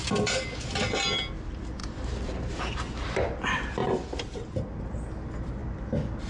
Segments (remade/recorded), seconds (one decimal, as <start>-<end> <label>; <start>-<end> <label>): 0.0-1.8 recorded; 1.8-2.6 remade; 2.6-3.8 recorded; 3.8-4.8 remade; 4.8-6.3 recorded